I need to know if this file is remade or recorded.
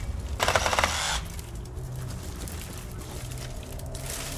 recorded